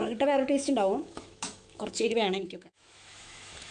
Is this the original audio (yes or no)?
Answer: no